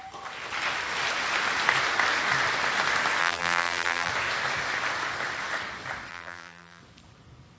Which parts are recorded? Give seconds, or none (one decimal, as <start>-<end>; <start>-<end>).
0.0-3.2; 4.1-6.1; 6.8-7.6